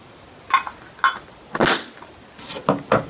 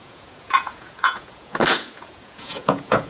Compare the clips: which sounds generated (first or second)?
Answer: second